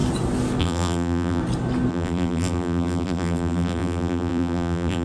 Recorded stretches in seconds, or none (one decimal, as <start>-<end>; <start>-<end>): 0.0-0.6; 1.4-1.9